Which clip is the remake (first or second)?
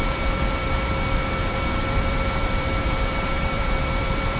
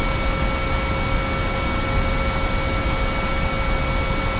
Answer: first